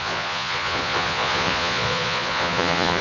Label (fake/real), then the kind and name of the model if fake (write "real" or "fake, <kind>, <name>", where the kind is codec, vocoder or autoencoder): fake, vocoder, Vocos